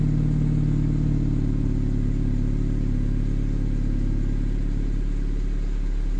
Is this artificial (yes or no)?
no